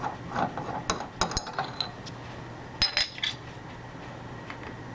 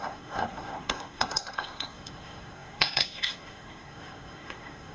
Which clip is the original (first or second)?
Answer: first